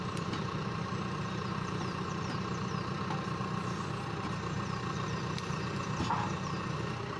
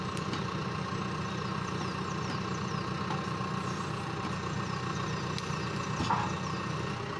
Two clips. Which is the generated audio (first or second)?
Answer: first